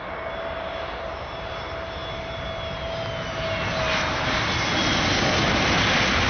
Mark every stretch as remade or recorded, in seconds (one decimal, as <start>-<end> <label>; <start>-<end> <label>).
0.0-6.3 recorded